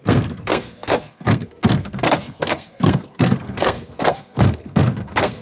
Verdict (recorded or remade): remade